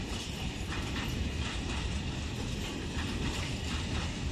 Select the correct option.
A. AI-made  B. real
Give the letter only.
A